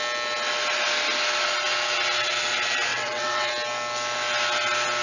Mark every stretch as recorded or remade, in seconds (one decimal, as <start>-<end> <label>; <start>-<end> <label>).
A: 0.0-2.9 recorded; 2.9-3.5 remade; 3.5-5.0 recorded